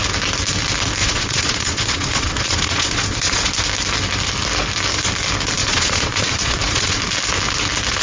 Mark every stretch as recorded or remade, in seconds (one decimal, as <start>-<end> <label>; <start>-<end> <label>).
0.0-1.0 recorded; 1.0-3.5 remade; 3.5-5.6 recorded; 5.6-7.0 remade; 7.0-8.0 recorded